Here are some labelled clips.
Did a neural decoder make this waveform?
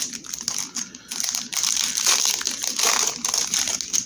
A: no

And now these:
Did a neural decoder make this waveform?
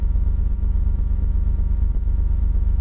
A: no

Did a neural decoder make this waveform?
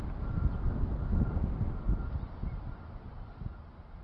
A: no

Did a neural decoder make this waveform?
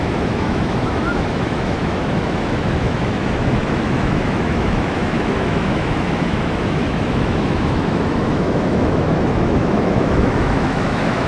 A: yes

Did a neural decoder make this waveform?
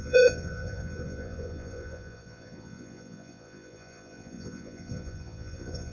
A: yes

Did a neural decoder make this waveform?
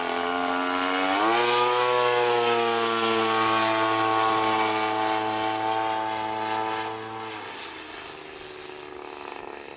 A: no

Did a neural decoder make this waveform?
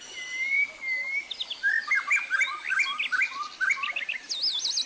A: no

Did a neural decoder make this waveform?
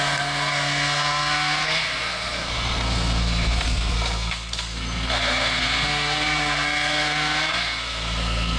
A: yes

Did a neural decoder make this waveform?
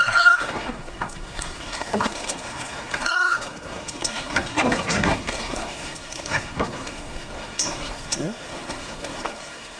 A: yes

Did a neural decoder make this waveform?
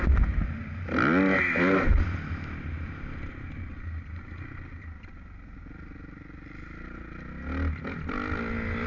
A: no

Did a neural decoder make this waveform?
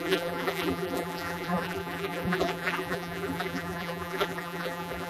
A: yes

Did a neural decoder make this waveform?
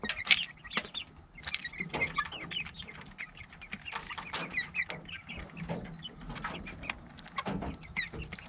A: no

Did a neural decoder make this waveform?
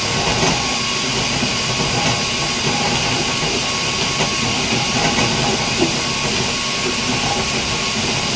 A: no